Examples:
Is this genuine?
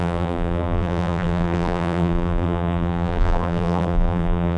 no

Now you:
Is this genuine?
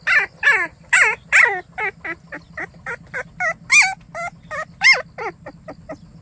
yes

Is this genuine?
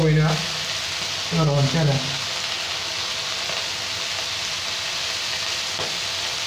yes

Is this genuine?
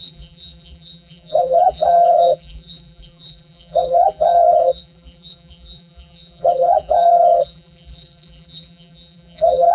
no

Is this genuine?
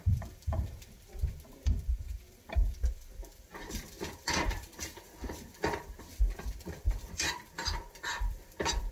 no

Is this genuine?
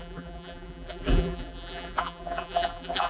no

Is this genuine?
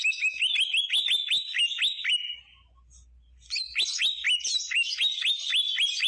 yes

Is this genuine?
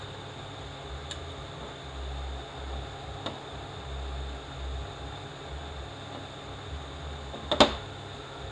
yes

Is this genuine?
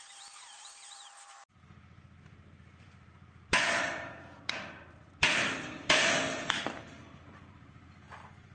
no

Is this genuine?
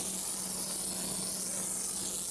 yes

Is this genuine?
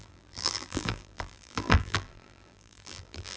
no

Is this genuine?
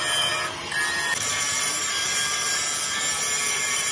yes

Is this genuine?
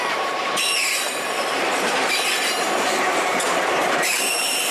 no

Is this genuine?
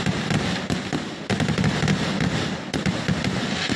yes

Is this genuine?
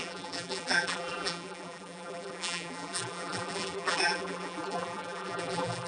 no